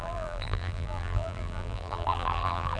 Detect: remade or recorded remade